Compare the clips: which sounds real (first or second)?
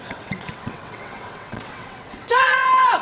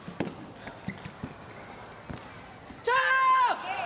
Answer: second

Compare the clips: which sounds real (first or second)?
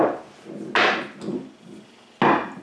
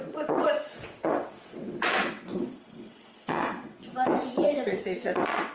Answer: first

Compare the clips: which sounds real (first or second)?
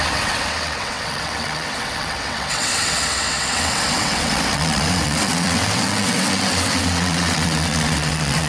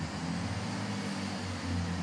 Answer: second